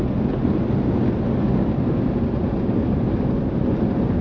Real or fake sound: real